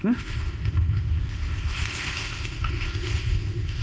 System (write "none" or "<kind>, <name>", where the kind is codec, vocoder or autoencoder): codec, ZipCodec